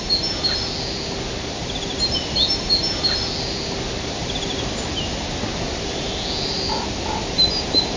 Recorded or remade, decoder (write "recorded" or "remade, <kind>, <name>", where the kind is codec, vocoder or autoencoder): recorded